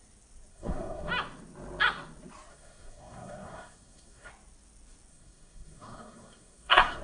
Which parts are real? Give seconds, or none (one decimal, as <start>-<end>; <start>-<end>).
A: 0.0-0.5; 1.1-2.5; 4.3-5.1